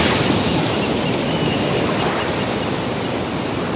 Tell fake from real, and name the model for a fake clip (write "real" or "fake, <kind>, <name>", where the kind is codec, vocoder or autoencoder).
real